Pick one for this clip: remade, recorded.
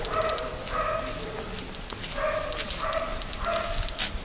recorded